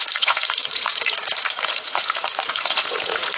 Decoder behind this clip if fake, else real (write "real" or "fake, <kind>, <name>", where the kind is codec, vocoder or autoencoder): fake, vocoder, Vocos